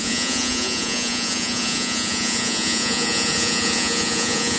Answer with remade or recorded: remade